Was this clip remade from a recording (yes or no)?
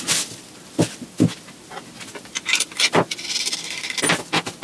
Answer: no